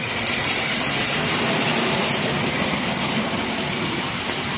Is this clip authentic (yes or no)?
no